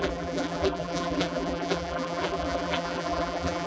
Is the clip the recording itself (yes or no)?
no